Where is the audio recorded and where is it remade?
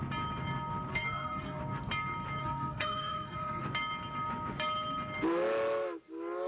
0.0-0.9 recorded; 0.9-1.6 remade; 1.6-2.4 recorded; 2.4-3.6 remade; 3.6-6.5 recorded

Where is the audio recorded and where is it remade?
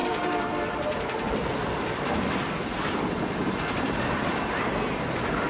0.0-4.3 remade; 4.3-5.0 recorded; 5.0-5.5 remade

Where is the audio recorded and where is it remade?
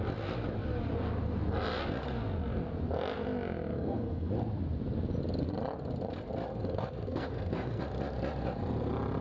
0.0-3.7 recorded; 3.7-4.3 remade; 4.3-6.5 recorded; 6.5-7.8 remade; 7.8-9.2 recorded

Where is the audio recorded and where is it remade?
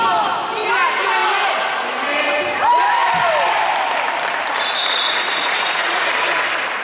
0.0-4.8 recorded; 4.8-6.1 remade; 6.1-6.8 recorded